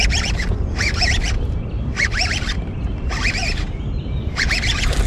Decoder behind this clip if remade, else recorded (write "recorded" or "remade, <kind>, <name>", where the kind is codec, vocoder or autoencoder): remade, vocoder, BigVGAN v2